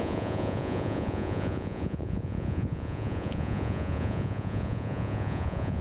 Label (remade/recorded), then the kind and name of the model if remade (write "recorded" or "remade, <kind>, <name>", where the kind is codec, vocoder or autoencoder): remade, vocoder, Vocos